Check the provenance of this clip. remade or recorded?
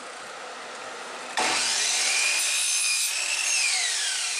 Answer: remade